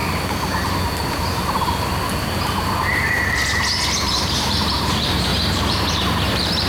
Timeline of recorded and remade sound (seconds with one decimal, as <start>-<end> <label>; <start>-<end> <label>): 0.0-4.0 recorded; 4.0-6.7 remade